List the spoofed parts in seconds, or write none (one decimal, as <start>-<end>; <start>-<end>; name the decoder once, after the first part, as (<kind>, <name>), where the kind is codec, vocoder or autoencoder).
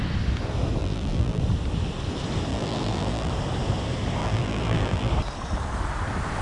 0.8-1.4 (vocoder, BigVGAN v2); 2.5-3.3; 4.2-5.1